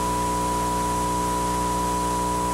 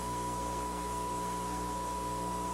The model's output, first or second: second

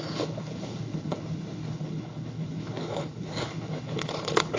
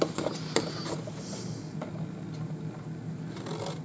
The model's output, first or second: first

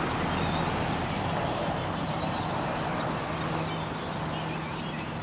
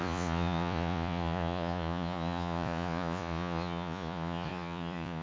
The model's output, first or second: second